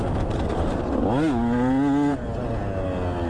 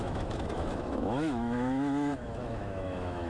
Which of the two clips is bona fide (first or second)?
first